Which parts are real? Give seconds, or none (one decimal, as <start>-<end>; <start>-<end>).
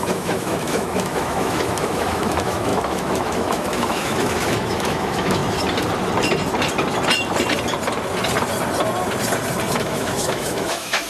5.4-9.7